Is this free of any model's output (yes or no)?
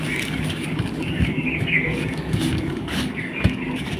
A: no